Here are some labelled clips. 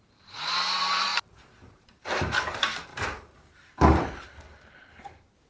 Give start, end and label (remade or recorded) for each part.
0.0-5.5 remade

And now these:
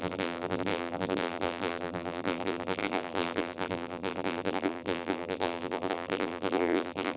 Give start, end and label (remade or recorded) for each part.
0.0-7.2 remade

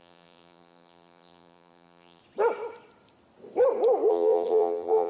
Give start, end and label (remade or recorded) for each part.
0.0-2.2 remade; 2.2-4.1 recorded; 4.1-5.1 remade

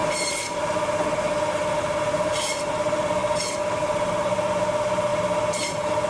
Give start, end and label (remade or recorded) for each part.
0.0-3.2 remade; 3.2-3.8 recorded; 3.8-6.1 remade

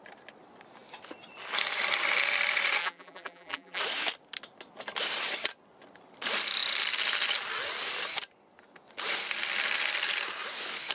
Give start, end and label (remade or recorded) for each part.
0.0-2.8 recorded; 2.8-3.8 remade; 3.8-10.9 recorded

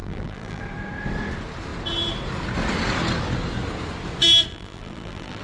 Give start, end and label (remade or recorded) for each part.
0.0-0.6 remade; 0.6-4.5 recorded; 4.5-5.4 remade